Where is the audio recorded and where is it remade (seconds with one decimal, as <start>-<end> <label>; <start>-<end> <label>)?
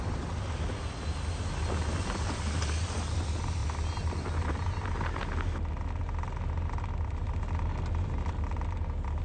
0.0-9.2 recorded